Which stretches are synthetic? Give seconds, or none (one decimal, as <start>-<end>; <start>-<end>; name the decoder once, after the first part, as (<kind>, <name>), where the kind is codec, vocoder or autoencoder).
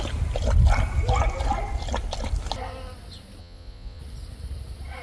3.4-4.0 (vocoder, Vocos)